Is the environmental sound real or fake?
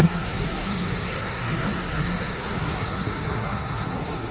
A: fake